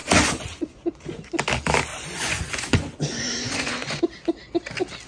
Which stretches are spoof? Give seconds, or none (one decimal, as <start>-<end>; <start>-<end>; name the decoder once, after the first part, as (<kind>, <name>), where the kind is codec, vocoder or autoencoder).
0.0-1.0 (vocoder, Vocos); 1.9-4.0